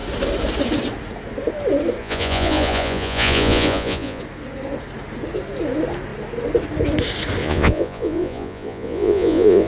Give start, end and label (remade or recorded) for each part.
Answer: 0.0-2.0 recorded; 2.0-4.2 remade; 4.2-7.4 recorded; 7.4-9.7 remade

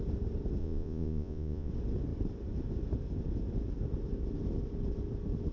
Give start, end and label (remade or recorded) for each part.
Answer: 0.0-0.6 recorded; 0.6-1.7 remade; 1.7-5.5 recorded

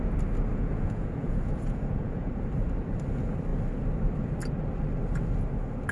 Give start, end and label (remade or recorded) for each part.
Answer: 0.0-0.5 recorded; 0.5-2.3 remade; 2.3-5.9 recorded

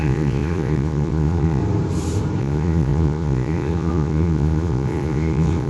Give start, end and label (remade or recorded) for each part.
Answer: 0.0-1.6 remade; 1.6-2.4 recorded; 2.4-5.7 remade

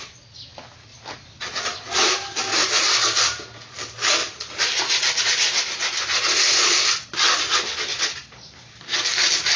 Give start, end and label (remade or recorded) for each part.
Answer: 0.0-9.6 recorded

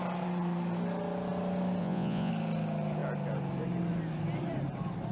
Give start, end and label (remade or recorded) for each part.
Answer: 0.0-1.8 recorded; 1.8-2.3 remade; 2.3-5.1 recorded